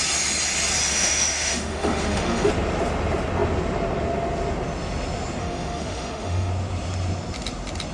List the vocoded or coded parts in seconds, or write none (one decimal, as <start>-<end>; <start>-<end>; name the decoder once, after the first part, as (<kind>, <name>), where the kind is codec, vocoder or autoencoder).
0.9-2.5 (autoencoder, DAC-VAE); 5.4-6.5